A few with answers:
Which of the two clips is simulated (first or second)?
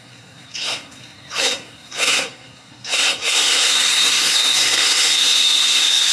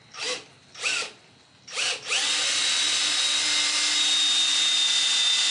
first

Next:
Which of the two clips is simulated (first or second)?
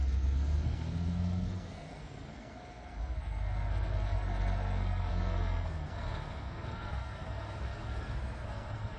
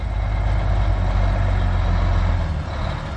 first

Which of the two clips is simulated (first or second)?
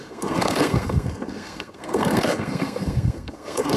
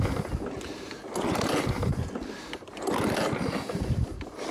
first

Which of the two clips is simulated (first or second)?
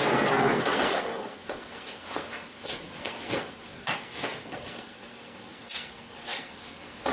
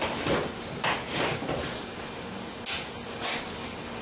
first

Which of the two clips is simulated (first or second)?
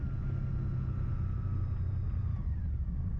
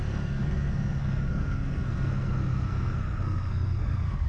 second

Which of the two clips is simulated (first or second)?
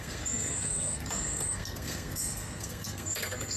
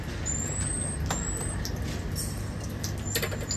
first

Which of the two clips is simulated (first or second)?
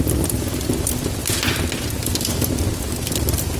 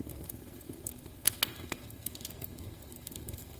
second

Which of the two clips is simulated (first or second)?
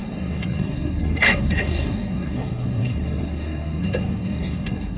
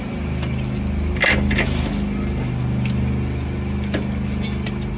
first